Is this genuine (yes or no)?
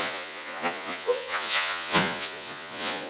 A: no